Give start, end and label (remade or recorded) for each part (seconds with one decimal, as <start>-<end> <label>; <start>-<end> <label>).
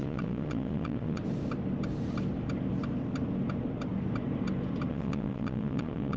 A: 0.0-1.2 remade; 1.2-4.9 recorded; 4.9-6.2 remade